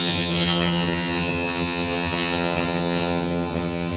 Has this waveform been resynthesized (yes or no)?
yes